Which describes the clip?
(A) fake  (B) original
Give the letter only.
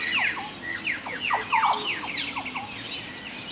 B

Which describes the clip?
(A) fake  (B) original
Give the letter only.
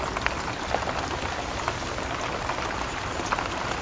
B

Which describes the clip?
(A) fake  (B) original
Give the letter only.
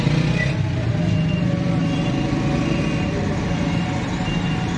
B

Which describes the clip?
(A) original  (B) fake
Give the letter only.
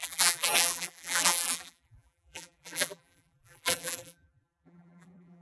B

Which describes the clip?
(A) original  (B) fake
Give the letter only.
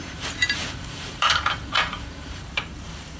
B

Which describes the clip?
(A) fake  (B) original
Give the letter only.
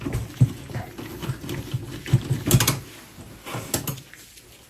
B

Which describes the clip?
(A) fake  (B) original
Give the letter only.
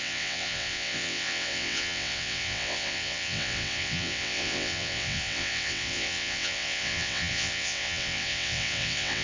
A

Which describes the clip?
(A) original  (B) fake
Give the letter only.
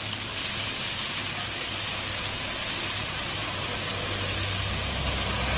A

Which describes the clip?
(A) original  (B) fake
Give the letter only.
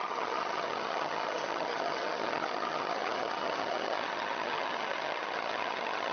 B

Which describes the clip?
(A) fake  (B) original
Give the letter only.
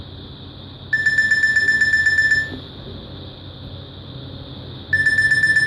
B